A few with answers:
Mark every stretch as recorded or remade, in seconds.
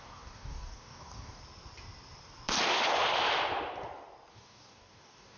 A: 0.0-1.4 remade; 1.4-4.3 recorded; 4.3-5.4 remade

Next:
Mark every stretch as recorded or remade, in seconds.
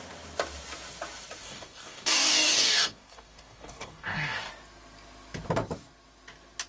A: 0.0-1.4 recorded; 1.4-4.5 remade; 4.5-6.7 recorded